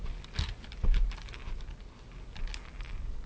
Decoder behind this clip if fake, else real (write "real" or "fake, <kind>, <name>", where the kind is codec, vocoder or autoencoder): real